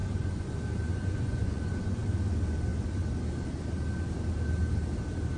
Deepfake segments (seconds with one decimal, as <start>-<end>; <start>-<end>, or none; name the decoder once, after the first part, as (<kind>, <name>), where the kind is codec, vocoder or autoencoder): 0.0-0.5 (vocoder, Vocos); 0.9-2.0